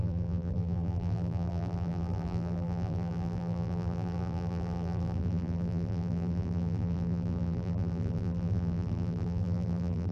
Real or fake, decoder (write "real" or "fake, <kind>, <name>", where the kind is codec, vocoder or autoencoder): fake, vocoder, BigVGAN v2